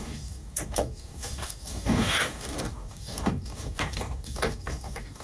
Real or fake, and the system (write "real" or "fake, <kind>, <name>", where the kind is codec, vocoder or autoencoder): fake, codec, DAC